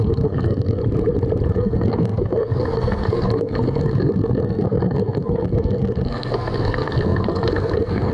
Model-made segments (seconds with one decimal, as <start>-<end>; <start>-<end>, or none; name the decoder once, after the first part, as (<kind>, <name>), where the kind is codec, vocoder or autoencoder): 0.0-0.8 (codec, SNAC); 1.5-8.1